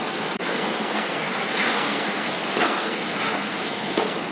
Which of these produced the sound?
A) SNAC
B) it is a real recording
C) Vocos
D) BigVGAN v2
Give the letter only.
A